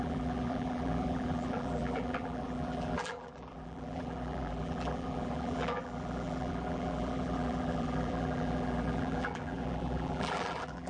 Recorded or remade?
remade